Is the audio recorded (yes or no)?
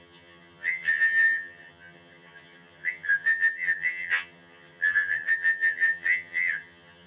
no